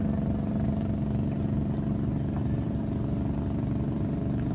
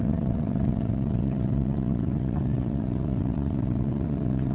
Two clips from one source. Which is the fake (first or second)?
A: second